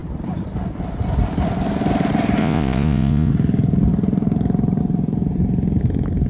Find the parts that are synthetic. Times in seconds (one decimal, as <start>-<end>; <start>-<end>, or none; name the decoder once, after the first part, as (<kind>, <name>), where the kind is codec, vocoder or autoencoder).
2.4-3.3 (vocoder, Vocos)